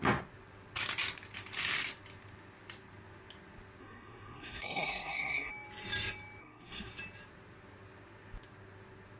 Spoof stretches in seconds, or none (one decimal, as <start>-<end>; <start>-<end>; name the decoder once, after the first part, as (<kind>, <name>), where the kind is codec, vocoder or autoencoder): 3.8-5.5 (codec, SNAC); 6.4-6.9